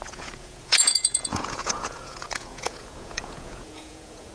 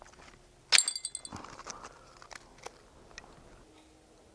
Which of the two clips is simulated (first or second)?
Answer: first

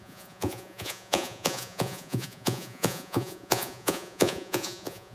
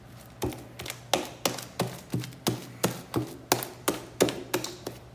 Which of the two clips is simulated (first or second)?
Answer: first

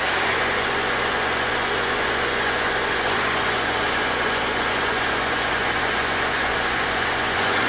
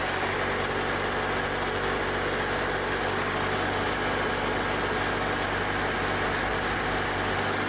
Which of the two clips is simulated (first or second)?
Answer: first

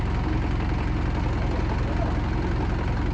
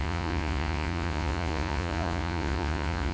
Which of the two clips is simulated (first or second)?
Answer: second